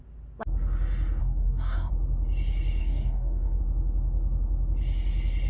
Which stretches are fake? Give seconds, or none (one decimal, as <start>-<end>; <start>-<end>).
1.2-1.9; 2.8-3.6